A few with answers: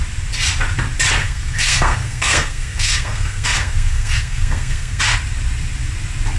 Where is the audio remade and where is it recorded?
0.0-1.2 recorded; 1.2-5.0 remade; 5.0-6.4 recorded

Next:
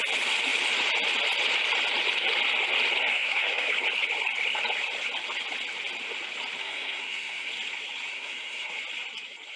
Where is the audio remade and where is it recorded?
0.0-3.1 recorded; 3.1-3.7 remade; 3.7-6.6 recorded; 6.6-7.5 remade; 7.5-8.1 recorded; 8.1-8.7 remade; 8.7-9.6 recorded

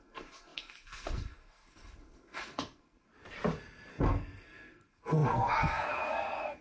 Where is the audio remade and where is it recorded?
0.0-3.1 remade; 3.1-3.9 recorded; 3.9-6.6 remade

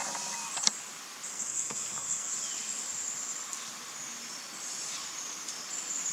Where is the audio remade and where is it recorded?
0.0-1.3 recorded; 1.3-2.3 remade; 2.3-6.1 recorded